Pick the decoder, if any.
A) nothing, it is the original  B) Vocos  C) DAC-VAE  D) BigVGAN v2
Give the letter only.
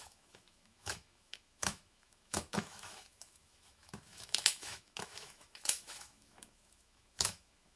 C